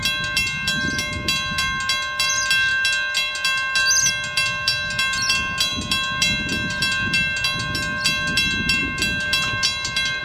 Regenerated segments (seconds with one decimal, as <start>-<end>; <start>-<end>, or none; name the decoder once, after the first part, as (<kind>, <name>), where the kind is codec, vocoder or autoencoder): none